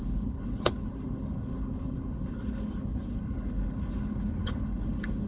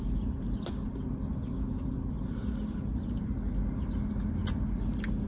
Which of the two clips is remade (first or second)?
first